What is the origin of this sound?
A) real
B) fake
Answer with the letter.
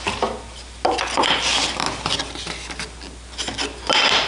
A